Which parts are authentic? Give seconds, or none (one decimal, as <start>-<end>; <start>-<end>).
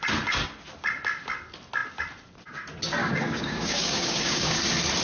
0.0-3.0; 4.6-5.0